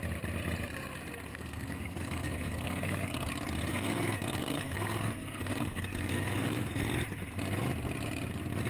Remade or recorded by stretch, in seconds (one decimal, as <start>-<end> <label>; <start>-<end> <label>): 0.0-1.3 recorded; 1.3-3.3 remade; 3.3-3.7 recorded; 3.7-6.8 remade; 6.8-8.7 recorded